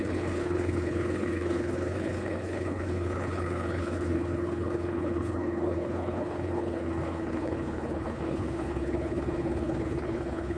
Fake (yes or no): yes